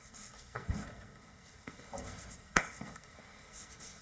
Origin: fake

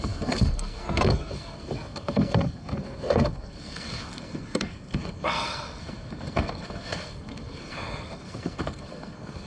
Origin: fake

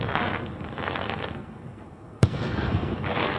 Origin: fake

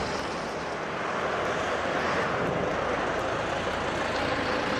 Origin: real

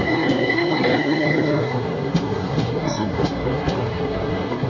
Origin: fake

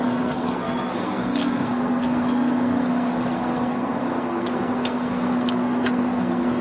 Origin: fake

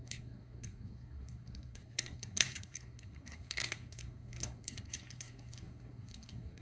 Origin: fake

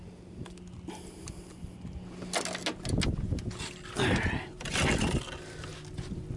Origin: real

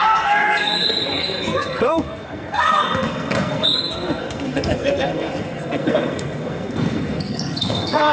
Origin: fake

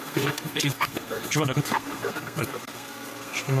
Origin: fake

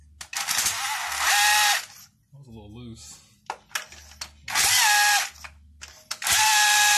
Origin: real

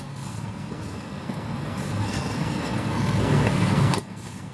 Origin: fake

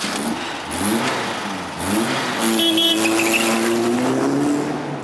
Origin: real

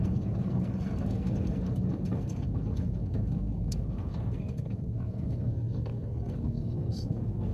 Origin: fake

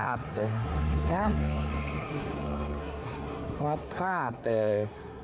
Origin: fake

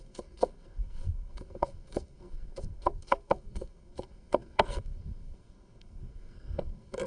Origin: fake